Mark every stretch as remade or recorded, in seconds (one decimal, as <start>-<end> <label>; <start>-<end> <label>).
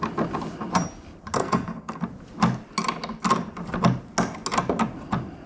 0.0-1.4 recorded; 1.4-2.0 remade; 2.0-5.5 recorded